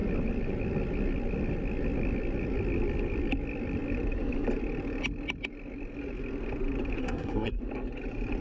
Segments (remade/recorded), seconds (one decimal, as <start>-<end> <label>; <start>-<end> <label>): 0.0-7.0 recorded; 7.0-7.6 remade; 7.6-8.4 recorded